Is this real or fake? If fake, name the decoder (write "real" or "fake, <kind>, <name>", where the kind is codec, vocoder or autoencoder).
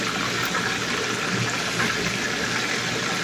real